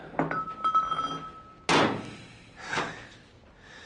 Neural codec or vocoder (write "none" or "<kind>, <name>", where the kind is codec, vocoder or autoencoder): none